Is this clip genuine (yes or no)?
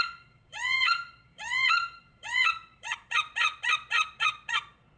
no